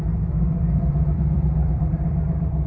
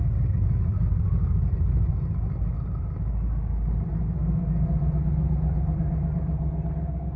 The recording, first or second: second